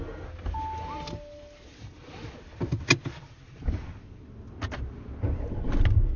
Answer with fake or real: real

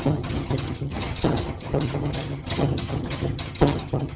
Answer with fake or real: fake